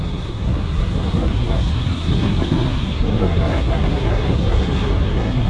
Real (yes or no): no